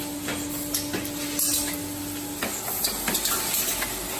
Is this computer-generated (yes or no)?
no